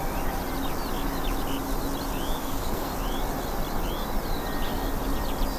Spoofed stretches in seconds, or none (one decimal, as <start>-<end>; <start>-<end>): 2.4-2.9